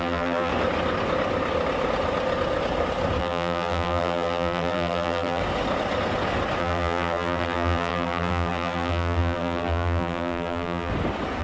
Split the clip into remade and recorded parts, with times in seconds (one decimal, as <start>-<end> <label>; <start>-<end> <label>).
0.0-0.5 remade; 0.5-3.2 recorded; 3.2-5.4 remade; 5.4-6.6 recorded; 6.6-10.9 remade; 10.9-11.4 recorded